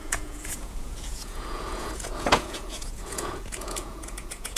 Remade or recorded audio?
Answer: remade